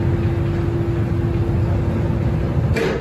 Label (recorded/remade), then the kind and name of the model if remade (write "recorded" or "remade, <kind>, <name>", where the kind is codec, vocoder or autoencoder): recorded